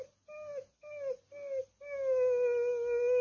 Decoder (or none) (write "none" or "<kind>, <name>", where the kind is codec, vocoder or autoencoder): none